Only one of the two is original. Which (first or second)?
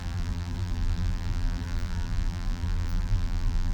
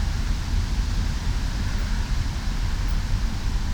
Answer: second